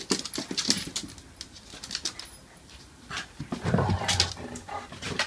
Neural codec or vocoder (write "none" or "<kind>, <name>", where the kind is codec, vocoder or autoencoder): none